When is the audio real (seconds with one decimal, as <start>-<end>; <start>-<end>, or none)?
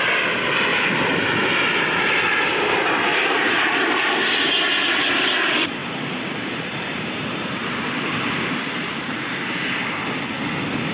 0.0-0.7; 1.3-3.1; 4.3-5.8; 9.4-10.9